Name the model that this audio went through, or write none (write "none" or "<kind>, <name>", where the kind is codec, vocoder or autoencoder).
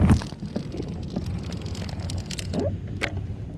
none